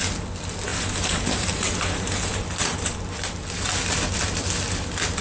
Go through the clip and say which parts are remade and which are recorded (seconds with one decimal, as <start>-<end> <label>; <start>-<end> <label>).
0.0-0.7 recorded; 0.7-2.4 remade; 2.4-5.2 recorded